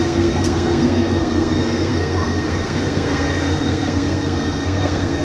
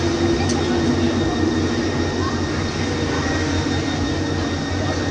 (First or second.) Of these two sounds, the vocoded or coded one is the first